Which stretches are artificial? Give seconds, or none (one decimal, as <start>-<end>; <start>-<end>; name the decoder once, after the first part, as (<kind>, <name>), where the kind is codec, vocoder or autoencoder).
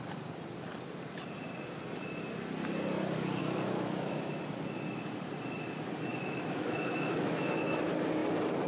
3.4-4.4 (autoencoder, DAC-VAE); 6.1-7.8